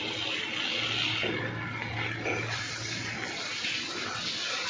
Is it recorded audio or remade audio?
recorded